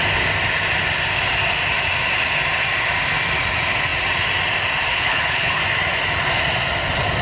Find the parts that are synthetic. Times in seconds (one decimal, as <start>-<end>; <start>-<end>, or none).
4.9-5.6